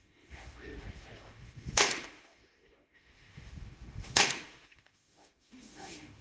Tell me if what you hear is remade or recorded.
remade